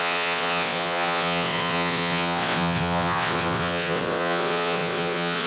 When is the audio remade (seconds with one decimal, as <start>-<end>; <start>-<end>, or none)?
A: 0.0-5.5

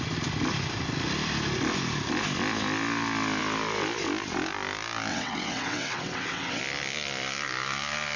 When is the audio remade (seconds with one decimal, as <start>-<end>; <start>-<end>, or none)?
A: 5.1-6.6

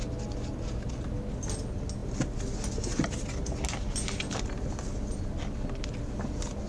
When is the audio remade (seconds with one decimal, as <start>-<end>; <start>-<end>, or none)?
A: none

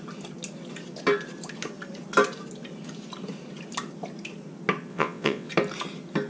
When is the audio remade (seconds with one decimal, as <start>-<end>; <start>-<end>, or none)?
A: 4.9-5.5

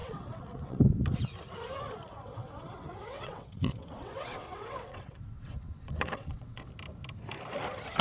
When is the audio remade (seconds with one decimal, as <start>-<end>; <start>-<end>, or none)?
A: 0.0-0.9; 2.1-6.7

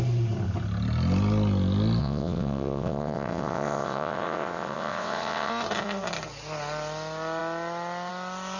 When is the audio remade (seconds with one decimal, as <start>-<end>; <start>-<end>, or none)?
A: 2.0-5.5